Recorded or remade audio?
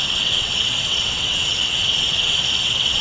remade